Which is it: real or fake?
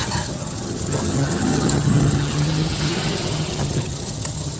fake